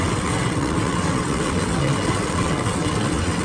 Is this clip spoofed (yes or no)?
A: yes